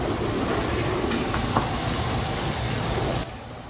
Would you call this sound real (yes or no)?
yes